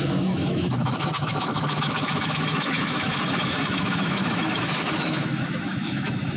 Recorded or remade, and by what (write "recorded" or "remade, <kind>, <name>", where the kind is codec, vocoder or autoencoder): remade, autoencoder, DAC-VAE